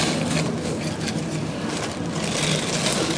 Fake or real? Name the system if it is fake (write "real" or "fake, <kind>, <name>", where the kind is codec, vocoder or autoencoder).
real